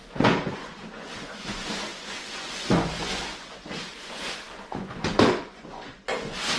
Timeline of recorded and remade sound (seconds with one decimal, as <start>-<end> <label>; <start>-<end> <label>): 0.0-6.6 remade